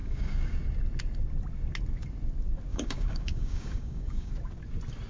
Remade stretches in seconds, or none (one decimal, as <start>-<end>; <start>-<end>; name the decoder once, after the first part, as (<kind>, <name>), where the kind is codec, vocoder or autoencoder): 0.0-0.6 (codec, DAC); 2.7-4.3